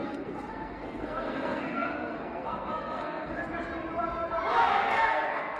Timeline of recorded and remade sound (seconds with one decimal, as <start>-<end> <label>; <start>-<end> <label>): 0.0-3.4 remade; 3.4-4.6 recorded; 4.6-5.6 remade

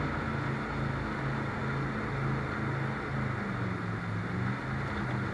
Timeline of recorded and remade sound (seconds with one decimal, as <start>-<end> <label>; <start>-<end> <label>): 0.0-5.3 recorded

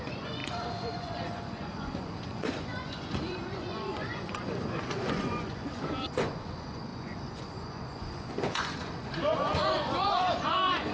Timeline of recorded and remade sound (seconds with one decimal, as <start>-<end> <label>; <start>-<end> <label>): 0.0-10.9 remade

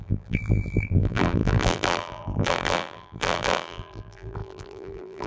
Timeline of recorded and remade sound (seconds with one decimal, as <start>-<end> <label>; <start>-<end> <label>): 0.0-5.3 remade

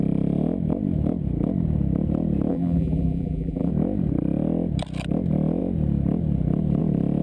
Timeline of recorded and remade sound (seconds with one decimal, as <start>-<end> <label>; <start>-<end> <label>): 0.0-2.5 recorded; 2.5-3.7 remade; 3.7-7.2 recorded